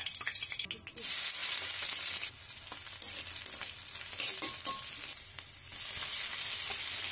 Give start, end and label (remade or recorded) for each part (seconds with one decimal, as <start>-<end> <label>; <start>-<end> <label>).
0.0-1.4 recorded; 1.4-2.0 remade; 2.0-7.1 recorded